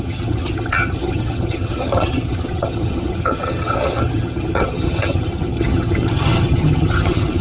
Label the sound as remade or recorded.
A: remade